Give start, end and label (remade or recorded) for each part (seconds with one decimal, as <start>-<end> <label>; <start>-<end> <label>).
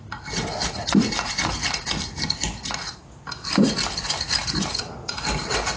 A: 0.0-5.8 recorded